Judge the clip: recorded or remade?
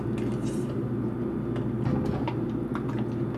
recorded